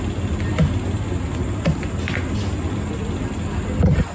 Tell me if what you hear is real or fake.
real